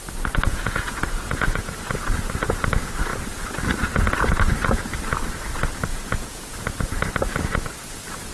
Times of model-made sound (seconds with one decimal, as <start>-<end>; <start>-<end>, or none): 0.5-2.0; 5.9-6.9